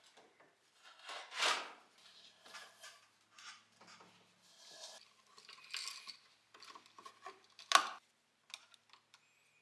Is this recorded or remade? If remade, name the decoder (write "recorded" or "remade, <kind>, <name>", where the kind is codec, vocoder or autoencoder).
recorded